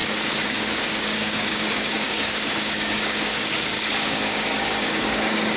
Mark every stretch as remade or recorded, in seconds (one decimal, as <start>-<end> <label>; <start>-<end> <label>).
0.0-5.6 remade